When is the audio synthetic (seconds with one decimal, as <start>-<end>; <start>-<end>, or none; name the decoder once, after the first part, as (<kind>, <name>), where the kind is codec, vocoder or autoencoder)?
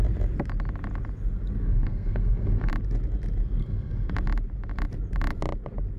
1.6-2.7 (codec, SNAC); 3.6-4.1